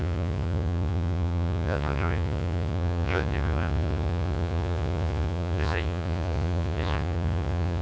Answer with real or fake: fake